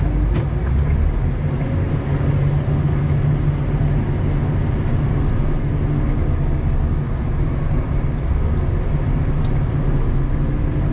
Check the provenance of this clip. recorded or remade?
recorded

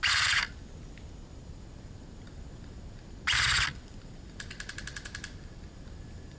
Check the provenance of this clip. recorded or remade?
recorded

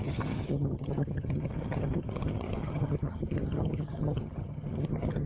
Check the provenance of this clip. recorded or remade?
remade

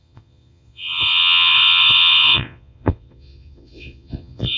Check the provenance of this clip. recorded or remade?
remade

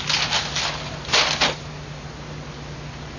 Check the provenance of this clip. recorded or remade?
recorded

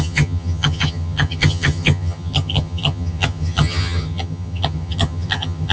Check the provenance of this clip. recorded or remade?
remade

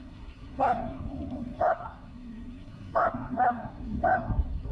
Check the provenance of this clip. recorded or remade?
remade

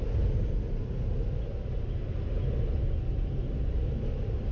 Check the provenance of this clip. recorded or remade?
recorded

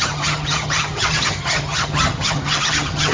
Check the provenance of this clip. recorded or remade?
remade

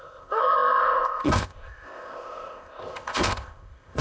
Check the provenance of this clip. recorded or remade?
remade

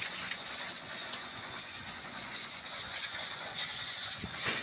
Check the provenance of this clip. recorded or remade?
remade